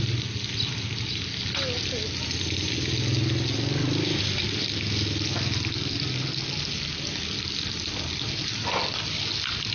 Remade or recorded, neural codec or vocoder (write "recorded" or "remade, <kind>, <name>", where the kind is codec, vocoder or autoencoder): recorded